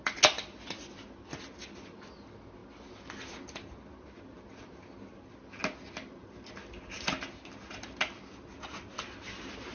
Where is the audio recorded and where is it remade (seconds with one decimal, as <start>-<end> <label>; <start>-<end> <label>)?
0.0-9.7 recorded